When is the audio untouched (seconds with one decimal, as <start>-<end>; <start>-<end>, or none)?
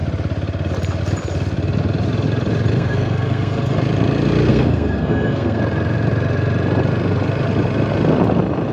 0.0-2.7; 3.8-4.5; 5.6-8.7